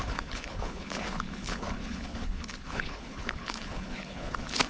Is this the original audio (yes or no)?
no